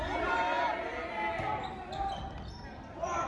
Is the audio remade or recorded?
recorded